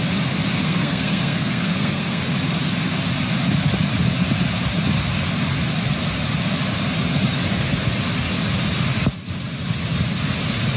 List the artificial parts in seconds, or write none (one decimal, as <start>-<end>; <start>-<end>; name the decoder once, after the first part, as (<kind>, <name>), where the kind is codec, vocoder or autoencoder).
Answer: 0.5-2.2 (codec, SNAC)